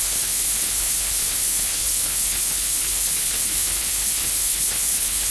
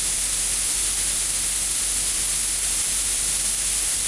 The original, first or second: second